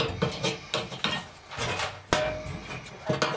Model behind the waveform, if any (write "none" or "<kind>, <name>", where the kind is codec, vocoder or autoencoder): none